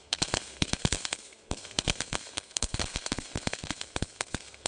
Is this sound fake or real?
fake